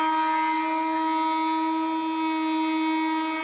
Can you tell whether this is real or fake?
real